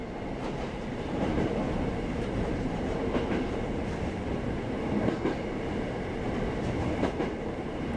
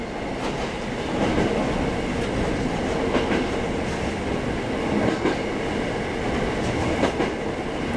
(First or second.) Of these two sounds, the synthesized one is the first